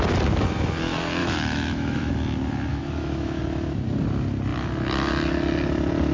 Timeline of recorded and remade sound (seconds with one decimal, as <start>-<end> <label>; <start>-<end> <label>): 0.0-1.2 recorded; 1.2-2.1 remade; 2.1-2.7 recorded; 2.7-3.4 remade; 3.4-6.1 recorded